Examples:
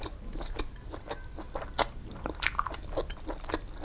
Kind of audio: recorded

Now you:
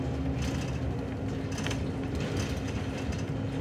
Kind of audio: recorded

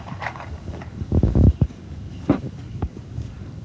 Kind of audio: remade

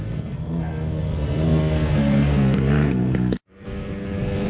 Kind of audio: remade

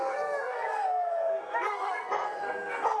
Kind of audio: remade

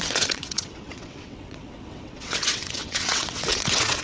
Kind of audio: remade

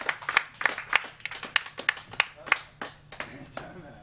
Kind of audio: recorded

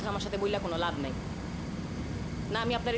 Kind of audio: recorded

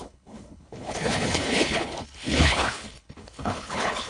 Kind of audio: remade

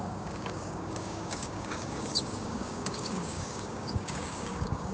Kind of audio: remade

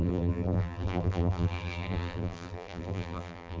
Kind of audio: remade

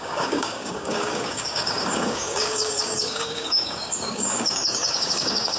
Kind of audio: remade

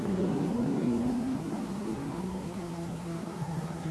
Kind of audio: remade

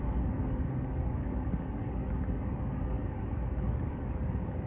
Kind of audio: remade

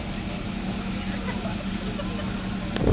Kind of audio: recorded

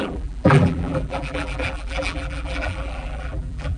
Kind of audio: remade